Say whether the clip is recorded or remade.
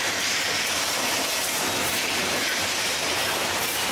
remade